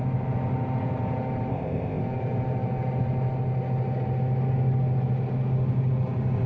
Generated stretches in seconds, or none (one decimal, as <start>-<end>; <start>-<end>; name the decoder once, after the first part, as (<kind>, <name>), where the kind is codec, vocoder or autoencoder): 1.5-2.0 (codec, ZipCodec)